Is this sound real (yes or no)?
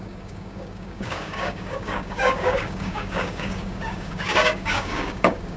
no